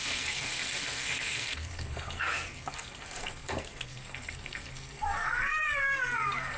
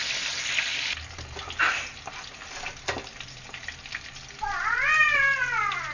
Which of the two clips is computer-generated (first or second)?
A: first